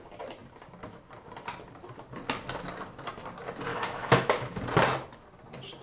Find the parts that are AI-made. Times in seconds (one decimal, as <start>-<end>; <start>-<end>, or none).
3.7-4.6